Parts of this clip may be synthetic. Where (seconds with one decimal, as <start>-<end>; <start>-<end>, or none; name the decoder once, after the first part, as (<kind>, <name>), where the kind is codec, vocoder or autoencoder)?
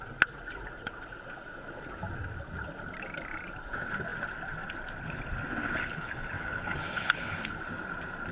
5.6-7.6 (codec, HILCodec)